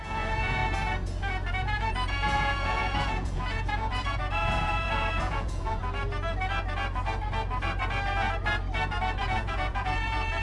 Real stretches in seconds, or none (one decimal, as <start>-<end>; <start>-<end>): 0.6-1.5; 5.8-9.2